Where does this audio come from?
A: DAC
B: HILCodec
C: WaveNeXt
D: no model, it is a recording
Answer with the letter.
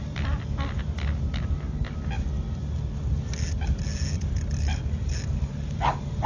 D